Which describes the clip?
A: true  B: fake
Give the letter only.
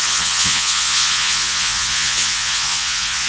B